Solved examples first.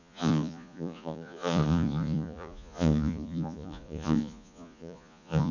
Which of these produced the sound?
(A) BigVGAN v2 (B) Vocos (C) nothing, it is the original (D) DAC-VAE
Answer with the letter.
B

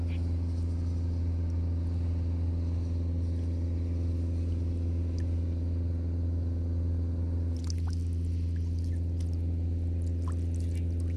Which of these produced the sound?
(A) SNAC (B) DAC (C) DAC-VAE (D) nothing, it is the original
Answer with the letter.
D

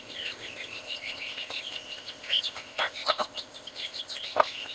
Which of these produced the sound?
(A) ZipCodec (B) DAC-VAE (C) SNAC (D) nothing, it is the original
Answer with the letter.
A